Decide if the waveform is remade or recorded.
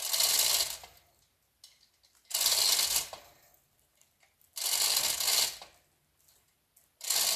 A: recorded